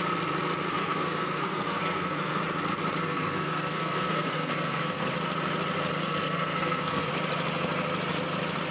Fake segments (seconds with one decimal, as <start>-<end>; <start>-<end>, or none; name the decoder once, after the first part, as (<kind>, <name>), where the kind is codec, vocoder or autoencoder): 0.7-2.4 (codec, SNAC); 3.0-5.1; 6.0-7.1